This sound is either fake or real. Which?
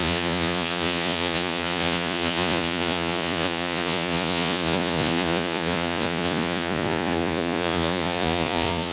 fake